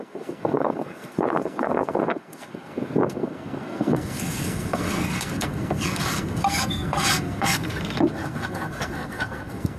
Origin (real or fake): fake